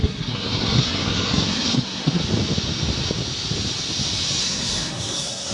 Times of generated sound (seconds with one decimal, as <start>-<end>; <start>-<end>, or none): 0.0-2.2; 4.4-5.5